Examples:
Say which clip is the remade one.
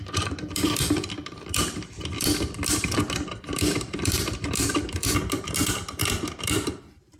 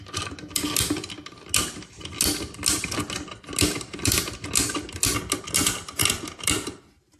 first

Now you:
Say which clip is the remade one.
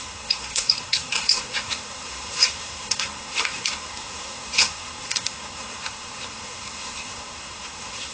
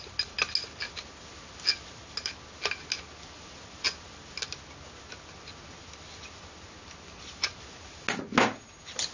first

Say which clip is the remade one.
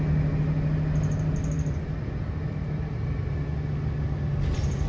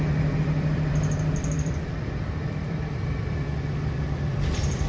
second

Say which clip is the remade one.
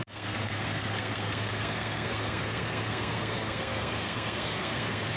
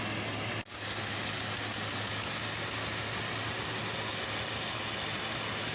first